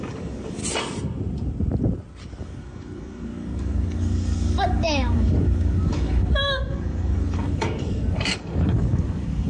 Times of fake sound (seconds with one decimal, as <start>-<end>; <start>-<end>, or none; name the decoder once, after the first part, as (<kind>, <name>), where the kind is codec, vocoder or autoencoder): 0.0-0.6 (codec, DAC); 2.4-9.5